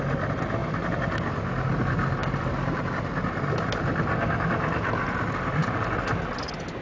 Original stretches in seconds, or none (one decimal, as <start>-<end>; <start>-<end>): 0.0-0.6; 1.3-2.2; 2.7-5.6